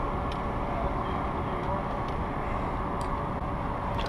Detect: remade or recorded recorded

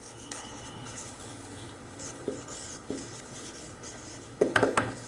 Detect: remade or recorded remade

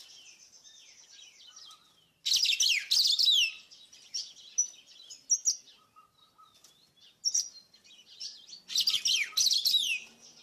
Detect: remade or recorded recorded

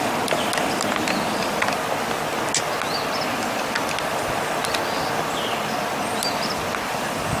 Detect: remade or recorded recorded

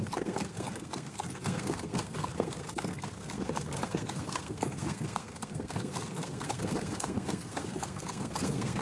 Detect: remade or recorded remade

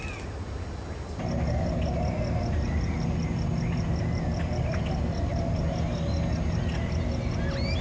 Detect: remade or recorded recorded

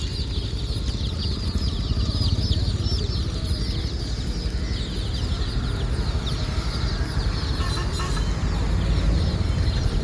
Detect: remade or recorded recorded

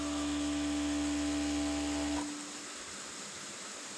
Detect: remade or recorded recorded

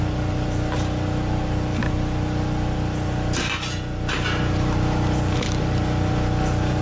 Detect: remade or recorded recorded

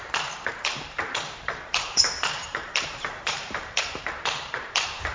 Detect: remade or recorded remade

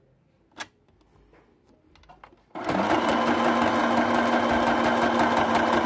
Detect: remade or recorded recorded